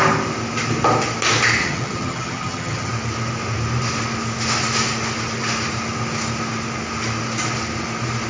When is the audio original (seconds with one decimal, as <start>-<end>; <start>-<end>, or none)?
0.0-1.6; 2.9-8.3